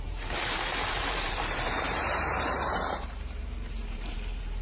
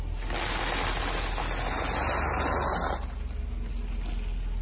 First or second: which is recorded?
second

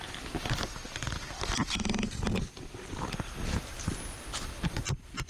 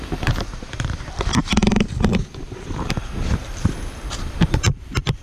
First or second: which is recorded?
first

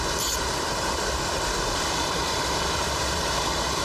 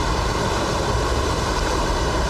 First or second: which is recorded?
second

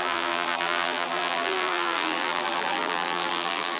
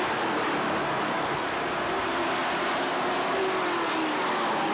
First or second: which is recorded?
second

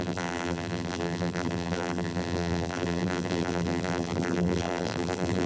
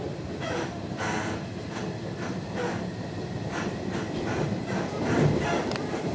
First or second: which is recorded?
second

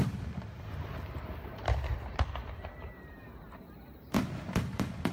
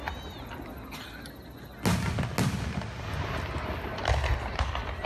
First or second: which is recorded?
second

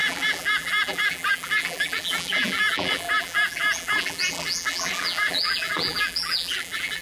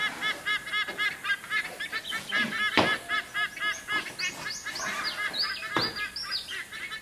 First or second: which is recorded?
second